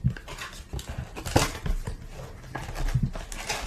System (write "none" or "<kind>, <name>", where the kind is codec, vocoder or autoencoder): none